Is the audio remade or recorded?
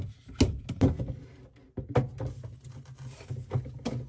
recorded